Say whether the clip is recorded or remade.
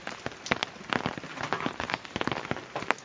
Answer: recorded